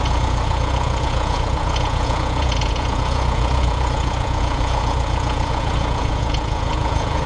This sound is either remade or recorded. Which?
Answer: remade